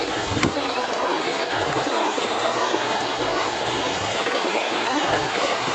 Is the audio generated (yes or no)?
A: yes